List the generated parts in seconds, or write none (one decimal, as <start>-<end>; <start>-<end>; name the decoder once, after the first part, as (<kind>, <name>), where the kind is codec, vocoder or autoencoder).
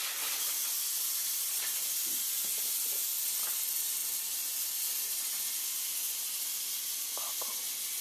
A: 1.2-2.3 (vocoder, BigVGAN v2)